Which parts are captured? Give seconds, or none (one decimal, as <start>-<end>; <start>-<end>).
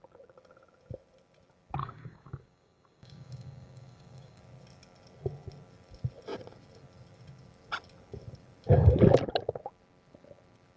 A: 0.0-1.8; 4.4-10.8